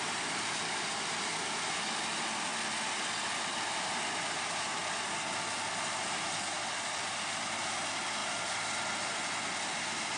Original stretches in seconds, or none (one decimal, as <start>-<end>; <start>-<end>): 2.5-3.5; 4.8-6.6; 8.2-9.3